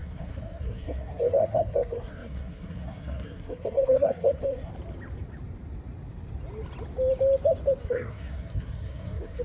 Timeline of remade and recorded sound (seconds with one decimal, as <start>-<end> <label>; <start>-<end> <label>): 0.0-4.7 remade; 4.7-7.8 recorded; 7.8-9.4 remade